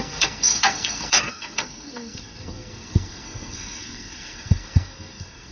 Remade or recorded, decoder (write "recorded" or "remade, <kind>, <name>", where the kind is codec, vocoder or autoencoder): remade, codec, SNAC